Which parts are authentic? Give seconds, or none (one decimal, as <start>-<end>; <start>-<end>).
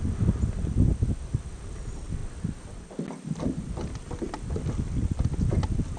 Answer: 0.0-6.0